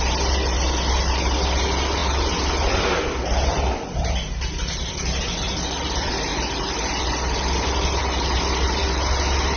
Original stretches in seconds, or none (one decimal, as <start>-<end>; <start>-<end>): 0.0-9.6

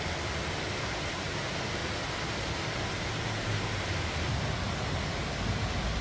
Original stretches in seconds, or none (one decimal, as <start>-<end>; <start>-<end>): 0.0-6.0

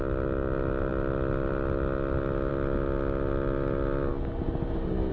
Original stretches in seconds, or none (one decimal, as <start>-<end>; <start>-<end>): 0.0-5.1